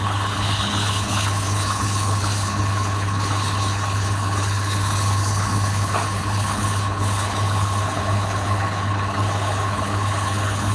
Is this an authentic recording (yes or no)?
no